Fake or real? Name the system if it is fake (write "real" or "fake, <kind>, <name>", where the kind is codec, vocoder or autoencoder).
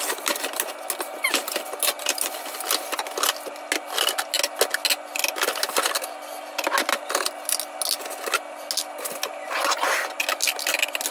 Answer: real